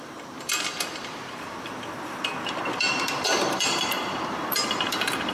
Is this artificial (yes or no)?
yes